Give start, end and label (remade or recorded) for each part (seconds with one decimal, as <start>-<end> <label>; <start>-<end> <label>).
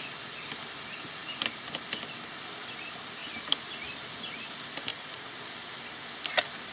0.0-4.9 recorded; 4.9-5.4 remade; 5.4-6.7 recorded